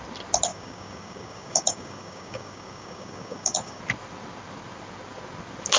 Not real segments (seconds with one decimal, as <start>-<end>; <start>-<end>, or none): 0.5-3.8